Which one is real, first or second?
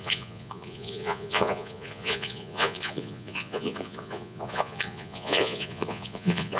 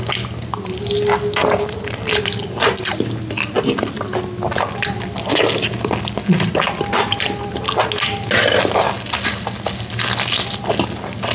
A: second